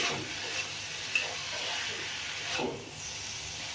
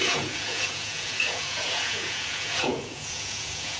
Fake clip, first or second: second